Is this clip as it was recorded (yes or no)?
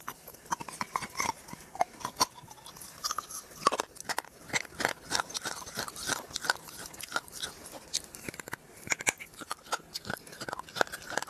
yes